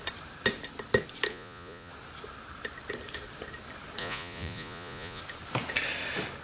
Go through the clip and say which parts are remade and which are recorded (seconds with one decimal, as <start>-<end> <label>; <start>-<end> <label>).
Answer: 0.0-1.3 recorded; 1.3-1.9 remade; 1.9-4.0 recorded; 4.0-5.2 remade; 5.2-6.4 recorded